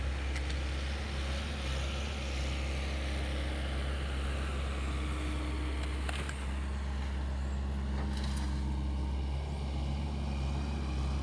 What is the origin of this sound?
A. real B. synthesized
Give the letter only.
A